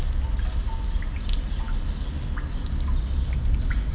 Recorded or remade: recorded